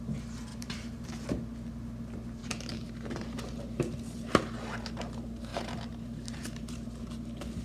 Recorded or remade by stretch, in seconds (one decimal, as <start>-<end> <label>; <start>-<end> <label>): 0.0-0.5 recorded; 0.5-1.1 remade; 1.1-2.4 recorded; 2.4-2.9 remade; 2.9-5.5 recorded; 5.5-6.9 remade; 6.9-7.6 recorded